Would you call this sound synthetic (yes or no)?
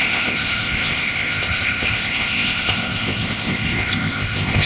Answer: yes